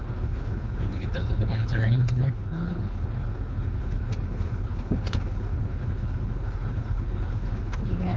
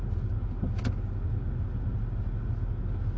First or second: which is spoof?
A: first